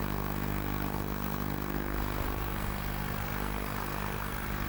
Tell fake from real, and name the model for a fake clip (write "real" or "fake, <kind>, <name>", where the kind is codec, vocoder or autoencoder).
fake, codec, SNAC